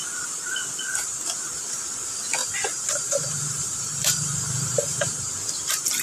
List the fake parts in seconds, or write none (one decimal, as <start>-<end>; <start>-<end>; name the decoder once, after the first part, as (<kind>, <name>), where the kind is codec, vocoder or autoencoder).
2.4-5.5 (vocoder, BigVGAN v2)